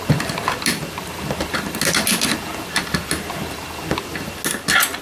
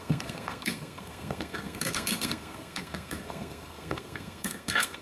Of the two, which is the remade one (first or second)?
second